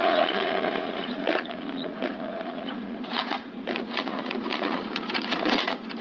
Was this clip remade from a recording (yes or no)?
yes